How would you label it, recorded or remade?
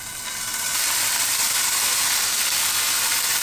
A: recorded